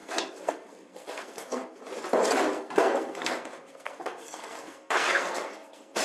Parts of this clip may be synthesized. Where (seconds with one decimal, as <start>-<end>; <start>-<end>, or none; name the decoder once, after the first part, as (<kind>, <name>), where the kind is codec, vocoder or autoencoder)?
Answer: 0.0-1.8 (codec, SNAC); 2.5-6.0